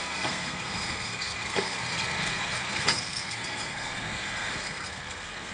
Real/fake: fake